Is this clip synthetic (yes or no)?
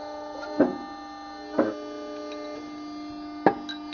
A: no